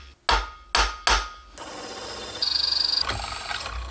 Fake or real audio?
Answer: real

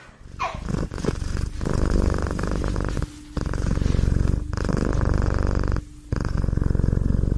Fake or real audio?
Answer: real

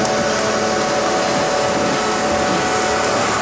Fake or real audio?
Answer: real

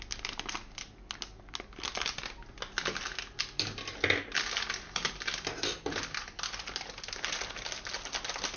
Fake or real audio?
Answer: real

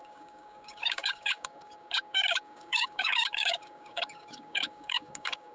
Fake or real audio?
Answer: fake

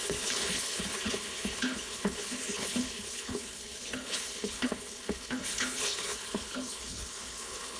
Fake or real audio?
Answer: fake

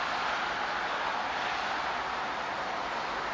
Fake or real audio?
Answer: real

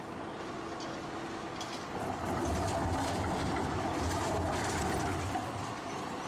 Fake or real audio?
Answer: real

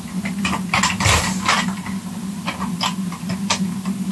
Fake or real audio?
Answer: real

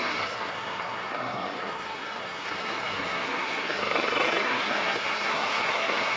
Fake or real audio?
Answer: fake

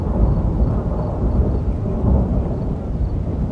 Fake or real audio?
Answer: fake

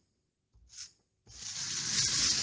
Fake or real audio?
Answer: real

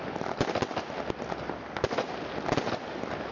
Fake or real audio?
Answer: real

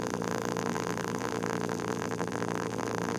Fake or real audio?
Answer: fake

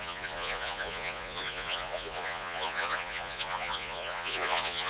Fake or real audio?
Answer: fake